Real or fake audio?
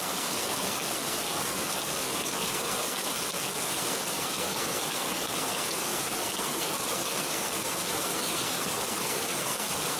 fake